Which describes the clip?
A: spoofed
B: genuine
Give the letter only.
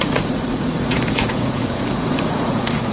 A